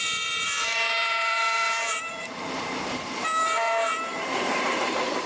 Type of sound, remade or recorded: remade